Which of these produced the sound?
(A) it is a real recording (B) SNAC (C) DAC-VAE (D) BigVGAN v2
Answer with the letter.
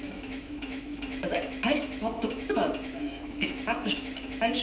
C